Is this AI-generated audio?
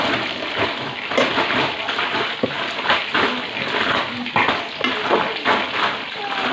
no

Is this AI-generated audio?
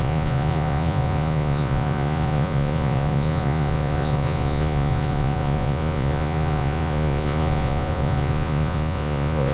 yes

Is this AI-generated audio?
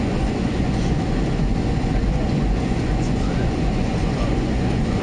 yes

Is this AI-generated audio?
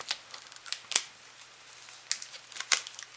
no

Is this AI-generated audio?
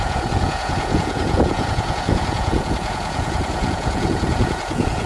yes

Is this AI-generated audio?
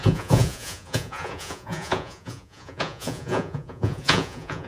yes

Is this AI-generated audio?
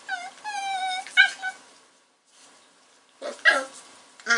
no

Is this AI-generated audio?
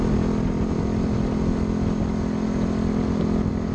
no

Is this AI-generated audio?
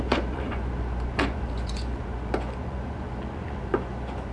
yes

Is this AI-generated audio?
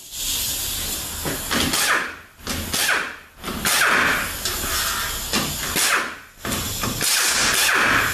no